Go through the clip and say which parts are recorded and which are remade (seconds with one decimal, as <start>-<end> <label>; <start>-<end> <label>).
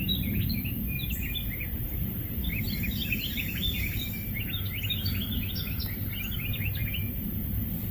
0.0-3.0 recorded; 3.0-4.4 remade; 4.4-7.9 recorded